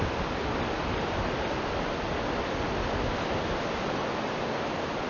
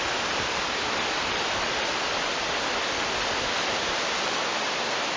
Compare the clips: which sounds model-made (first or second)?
second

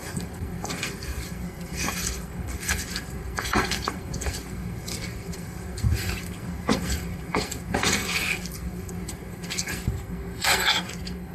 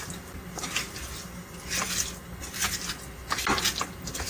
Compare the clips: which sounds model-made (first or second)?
first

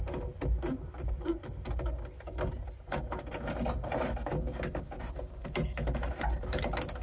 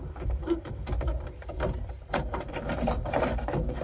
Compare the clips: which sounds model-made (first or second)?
second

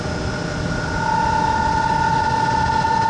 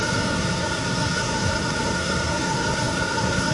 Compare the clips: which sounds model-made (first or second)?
second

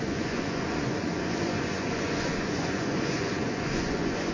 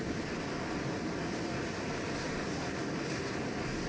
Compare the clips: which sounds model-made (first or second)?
first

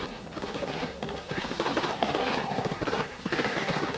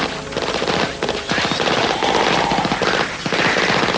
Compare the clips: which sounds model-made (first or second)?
first